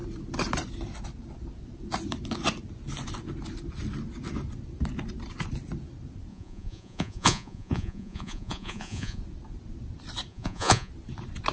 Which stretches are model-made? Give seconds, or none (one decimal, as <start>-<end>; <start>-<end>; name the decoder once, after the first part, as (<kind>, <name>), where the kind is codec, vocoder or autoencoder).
6.3-9.2 (vocoder, Vocos); 10.3-10.9